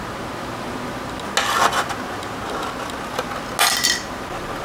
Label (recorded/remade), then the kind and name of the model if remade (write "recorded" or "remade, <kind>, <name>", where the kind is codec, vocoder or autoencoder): recorded